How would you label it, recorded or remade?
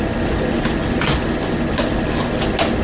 recorded